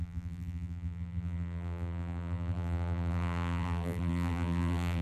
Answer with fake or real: fake